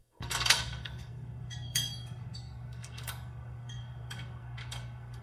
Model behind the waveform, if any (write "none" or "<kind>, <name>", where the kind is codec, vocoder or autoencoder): codec, SNAC